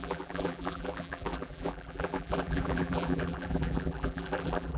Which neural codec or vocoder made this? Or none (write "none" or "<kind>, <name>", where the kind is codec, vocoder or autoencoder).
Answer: vocoder, BigVGAN v2